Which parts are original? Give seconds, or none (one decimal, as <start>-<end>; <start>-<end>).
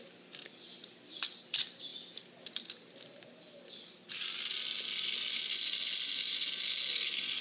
0.0-7.4